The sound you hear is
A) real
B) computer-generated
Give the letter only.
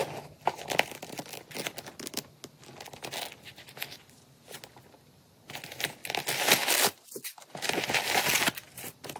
A